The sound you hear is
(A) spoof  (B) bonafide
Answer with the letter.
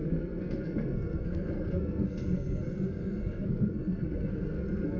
A